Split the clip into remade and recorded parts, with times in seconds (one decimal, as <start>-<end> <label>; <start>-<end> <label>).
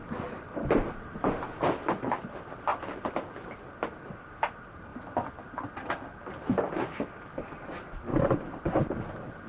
0.0-8.1 recorded; 8.1-9.1 remade; 9.1-9.5 recorded